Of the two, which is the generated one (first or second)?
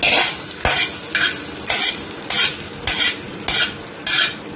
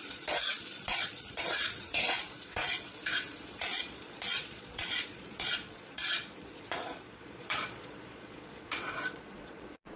second